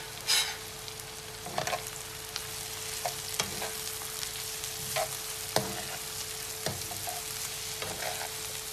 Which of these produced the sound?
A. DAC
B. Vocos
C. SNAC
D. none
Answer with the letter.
D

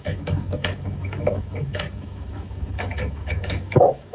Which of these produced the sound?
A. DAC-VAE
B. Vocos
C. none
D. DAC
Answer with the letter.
D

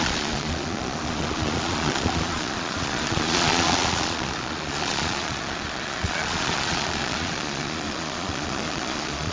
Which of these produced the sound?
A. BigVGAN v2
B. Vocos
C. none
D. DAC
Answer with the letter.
B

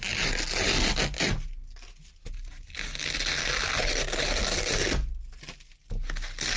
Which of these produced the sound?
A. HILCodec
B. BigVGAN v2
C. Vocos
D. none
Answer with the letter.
D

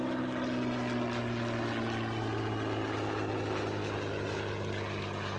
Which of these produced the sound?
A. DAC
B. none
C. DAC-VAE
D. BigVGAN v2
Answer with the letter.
B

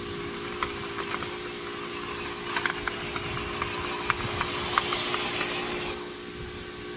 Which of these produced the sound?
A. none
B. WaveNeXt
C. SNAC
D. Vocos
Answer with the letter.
A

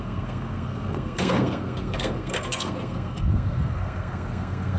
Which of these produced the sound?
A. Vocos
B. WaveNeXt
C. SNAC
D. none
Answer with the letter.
C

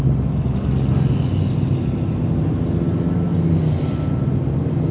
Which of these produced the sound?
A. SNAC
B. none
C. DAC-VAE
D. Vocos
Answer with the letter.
B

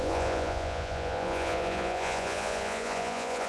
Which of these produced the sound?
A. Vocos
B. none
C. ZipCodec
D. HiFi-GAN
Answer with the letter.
A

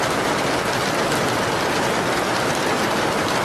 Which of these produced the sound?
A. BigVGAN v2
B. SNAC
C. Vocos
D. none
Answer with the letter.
D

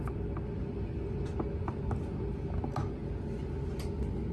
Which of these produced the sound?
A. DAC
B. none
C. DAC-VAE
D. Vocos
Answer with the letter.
B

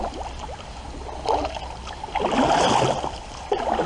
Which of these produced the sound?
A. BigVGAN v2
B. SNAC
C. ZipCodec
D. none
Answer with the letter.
D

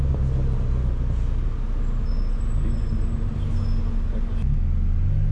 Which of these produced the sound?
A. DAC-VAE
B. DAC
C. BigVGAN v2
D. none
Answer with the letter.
D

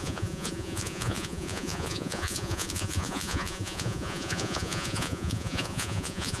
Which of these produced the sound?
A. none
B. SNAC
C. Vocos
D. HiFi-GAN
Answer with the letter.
C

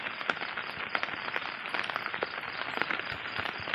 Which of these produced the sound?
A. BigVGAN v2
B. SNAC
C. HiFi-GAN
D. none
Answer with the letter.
D